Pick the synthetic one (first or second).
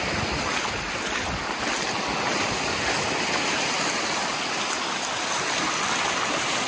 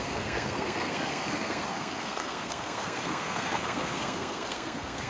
second